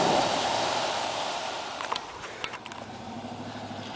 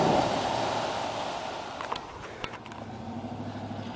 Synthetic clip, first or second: first